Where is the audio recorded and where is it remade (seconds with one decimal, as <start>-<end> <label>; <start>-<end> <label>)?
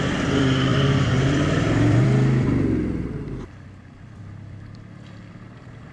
0.0-5.9 remade